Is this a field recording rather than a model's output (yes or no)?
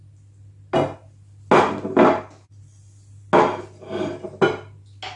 yes